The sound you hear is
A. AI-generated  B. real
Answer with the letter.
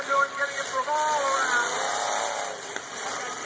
B